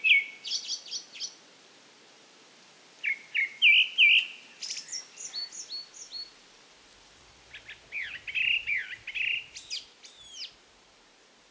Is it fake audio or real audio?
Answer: real